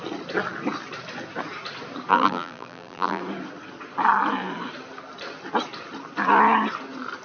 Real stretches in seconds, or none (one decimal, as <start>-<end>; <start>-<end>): 0.0-2.1; 3.2-7.2